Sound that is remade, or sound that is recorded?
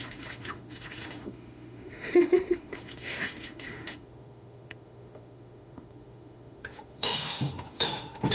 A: remade